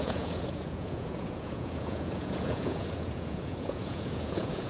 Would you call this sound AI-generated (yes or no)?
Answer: yes